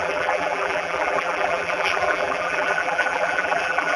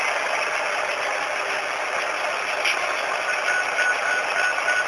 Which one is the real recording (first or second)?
second